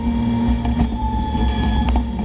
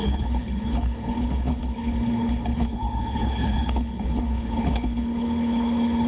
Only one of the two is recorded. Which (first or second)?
first